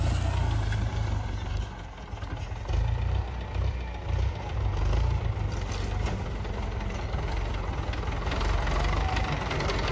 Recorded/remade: recorded